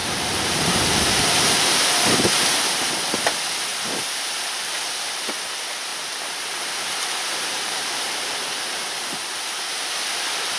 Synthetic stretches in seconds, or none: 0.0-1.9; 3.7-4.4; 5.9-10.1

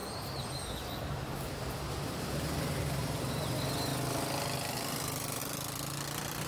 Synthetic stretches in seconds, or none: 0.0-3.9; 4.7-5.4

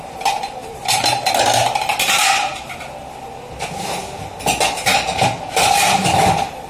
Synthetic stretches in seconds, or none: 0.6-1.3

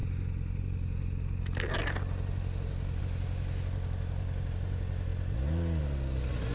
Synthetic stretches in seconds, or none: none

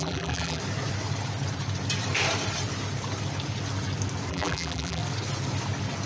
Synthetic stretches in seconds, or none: 0.0-0.6; 4.3-5.0

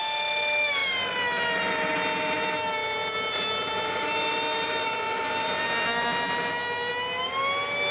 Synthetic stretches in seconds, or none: 2.8-5.6